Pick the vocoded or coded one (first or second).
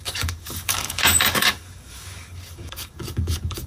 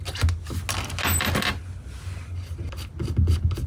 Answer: first